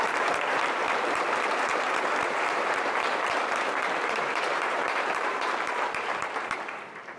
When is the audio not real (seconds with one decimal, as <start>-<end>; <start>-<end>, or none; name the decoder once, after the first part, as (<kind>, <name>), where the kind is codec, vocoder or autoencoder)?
0.0-1.7 (vocoder, BigVGAN v2); 2.3-7.2